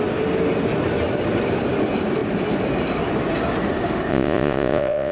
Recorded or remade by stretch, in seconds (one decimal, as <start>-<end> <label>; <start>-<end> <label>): 0.0-4.1 recorded; 4.1-5.1 remade